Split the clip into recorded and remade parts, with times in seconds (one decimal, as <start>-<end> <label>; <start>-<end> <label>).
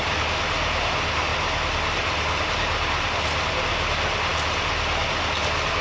0.0-5.8 recorded